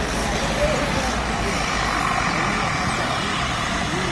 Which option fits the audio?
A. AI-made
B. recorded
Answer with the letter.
B